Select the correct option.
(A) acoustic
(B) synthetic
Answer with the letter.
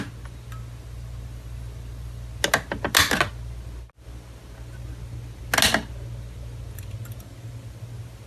A